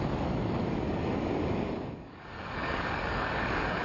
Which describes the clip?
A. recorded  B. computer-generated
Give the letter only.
B